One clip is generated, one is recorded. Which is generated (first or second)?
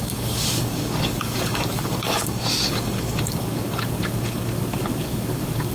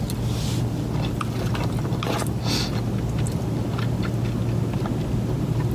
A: first